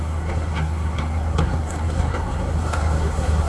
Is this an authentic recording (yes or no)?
no